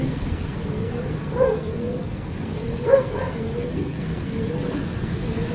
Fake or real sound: fake